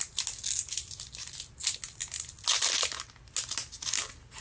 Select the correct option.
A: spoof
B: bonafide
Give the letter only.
B